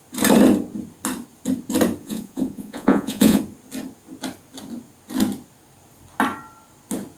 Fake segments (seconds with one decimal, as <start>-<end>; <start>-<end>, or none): 2.0-3.4